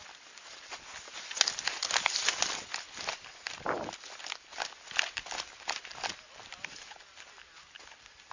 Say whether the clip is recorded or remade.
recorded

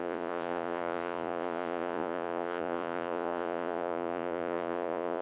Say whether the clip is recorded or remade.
remade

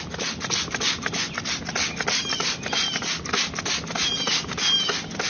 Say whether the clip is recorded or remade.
recorded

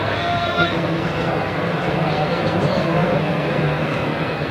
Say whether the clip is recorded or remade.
remade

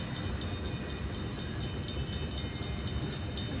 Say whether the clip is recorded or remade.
recorded